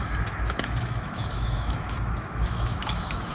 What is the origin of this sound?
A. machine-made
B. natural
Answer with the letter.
A